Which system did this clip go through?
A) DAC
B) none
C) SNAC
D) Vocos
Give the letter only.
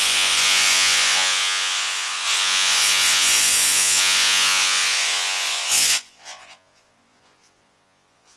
D